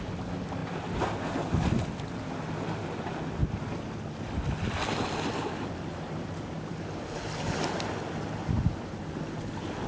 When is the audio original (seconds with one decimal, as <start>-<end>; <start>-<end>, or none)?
0.0-9.9